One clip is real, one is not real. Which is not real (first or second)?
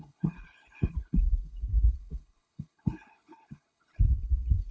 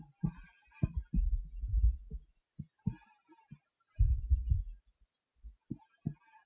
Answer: first